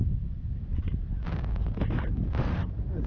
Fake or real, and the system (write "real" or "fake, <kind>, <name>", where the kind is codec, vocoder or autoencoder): real